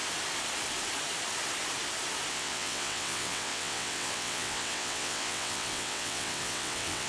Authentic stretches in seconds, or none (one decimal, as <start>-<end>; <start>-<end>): 0.0-2.3